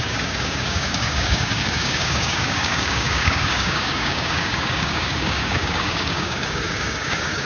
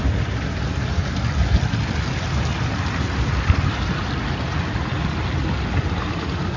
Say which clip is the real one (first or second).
second